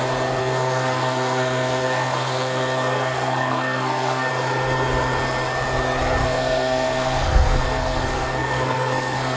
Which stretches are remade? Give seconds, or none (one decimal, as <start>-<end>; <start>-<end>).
0.4-4.3; 6.2-9.4